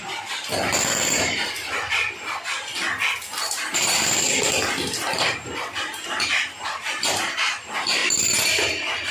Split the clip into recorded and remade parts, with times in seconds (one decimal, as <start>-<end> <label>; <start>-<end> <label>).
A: 0.0-2.8 remade; 2.8-6.6 recorded; 6.6-8.0 remade; 8.0-9.1 recorded